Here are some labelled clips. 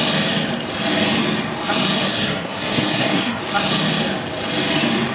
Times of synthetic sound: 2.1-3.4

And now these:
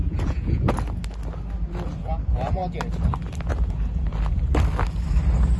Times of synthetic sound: 0.0-0.7

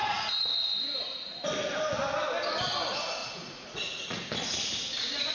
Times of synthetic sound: 0.0-1.5; 3.2-4.3

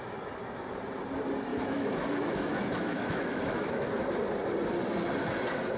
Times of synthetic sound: 1.5-3.9

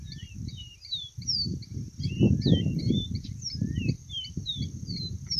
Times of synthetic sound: 0.0-5.4

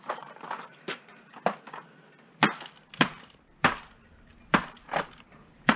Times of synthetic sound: 0.0-1.1; 2.9-4.3